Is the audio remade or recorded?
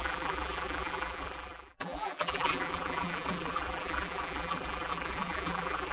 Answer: remade